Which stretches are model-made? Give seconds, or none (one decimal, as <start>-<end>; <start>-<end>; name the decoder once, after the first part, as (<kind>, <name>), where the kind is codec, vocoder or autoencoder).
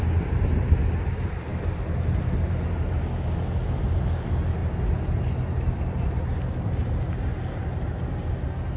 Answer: none